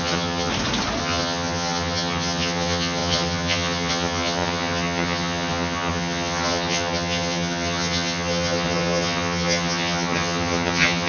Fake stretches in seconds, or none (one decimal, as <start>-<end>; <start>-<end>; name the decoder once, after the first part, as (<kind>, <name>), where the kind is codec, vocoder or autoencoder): 0.0-0.5 (vocoder, HiFi-GAN); 1.0-11.1